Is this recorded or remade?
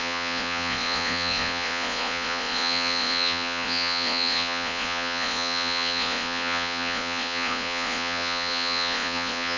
remade